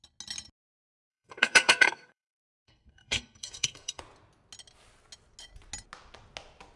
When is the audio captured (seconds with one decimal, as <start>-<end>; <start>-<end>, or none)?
0.0-1.1; 4.0-6.8